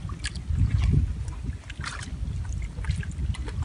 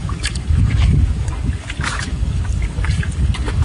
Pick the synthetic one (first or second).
second